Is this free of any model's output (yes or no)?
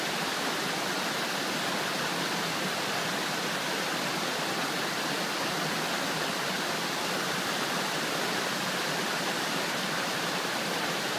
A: yes